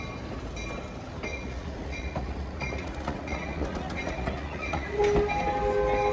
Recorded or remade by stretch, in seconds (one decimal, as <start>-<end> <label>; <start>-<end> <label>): 0.0-1.3 recorded; 1.3-5.0 remade; 5.0-6.1 recorded